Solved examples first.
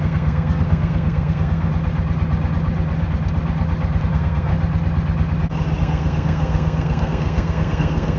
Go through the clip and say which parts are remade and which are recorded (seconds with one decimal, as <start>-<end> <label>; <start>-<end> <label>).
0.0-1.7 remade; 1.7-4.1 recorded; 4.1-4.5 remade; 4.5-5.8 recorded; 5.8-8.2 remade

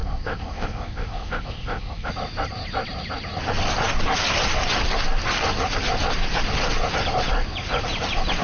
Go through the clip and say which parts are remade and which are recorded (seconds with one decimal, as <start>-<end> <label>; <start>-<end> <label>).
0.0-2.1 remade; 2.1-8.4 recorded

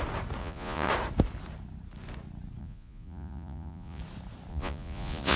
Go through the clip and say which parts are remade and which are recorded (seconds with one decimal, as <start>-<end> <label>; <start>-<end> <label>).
0.0-0.4 recorded; 0.4-0.9 remade; 0.9-2.6 recorded; 2.6-4.0 remade; 4.0-4.5 recorded; 4.5-5.4 remade